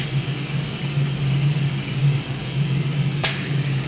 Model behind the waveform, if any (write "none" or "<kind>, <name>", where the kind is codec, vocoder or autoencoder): codec, DAC